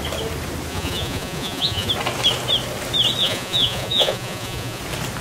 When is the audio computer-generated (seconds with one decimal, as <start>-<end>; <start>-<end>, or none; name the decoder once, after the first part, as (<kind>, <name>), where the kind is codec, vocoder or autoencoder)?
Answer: 0.7-1.9 (vocoder, Vocos); 3.2-4.8